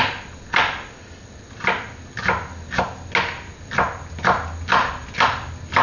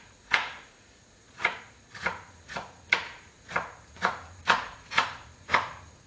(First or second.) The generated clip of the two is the second